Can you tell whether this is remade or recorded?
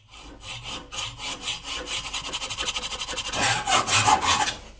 recorded